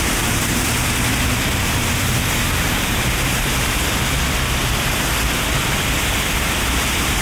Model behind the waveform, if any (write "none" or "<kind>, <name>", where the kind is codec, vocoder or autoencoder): vocoder, BigVGAN v2